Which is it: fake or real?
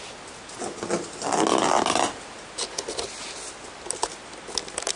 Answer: real